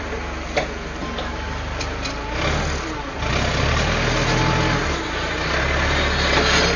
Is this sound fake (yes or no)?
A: no